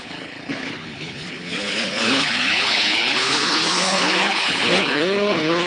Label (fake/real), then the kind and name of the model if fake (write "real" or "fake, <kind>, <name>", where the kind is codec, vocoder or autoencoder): fake, codec, HILCodec